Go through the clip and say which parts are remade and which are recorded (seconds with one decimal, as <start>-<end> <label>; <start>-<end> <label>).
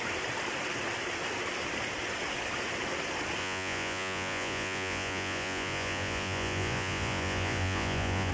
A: 0.0-3.4 recorded; 3.4-8.3 remade